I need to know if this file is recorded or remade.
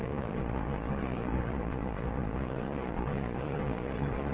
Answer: remade